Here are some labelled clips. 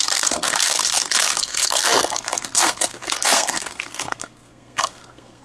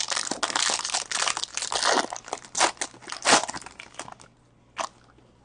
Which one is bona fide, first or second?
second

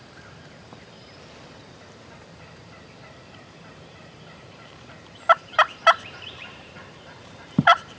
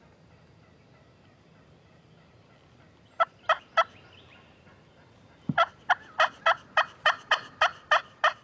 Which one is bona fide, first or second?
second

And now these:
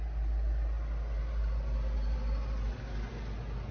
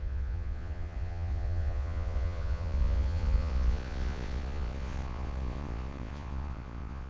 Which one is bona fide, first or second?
first